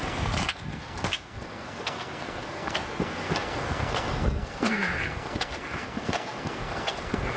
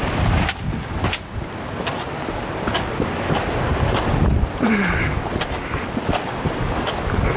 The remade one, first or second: first